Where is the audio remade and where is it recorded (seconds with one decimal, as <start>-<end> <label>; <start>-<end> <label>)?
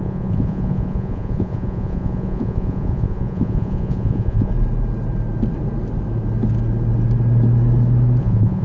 0.0-4.5 remade; 4.5-8.2 recorded; 8.2-8.6 remade